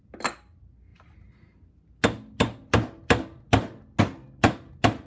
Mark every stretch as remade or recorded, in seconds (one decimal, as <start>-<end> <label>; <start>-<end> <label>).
0.0-5.1 recorded